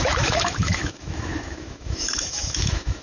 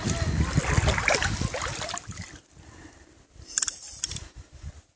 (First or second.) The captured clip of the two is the second